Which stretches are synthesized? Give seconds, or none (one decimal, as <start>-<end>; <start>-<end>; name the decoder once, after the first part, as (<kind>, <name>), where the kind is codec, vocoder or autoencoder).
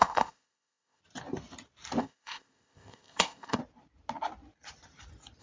0.0-1.0 (codec, ZipCodec); 2.0-3.6